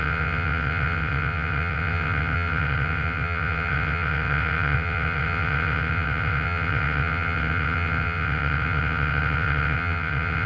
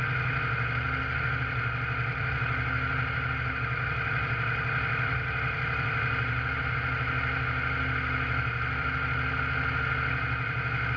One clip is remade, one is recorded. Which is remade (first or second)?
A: first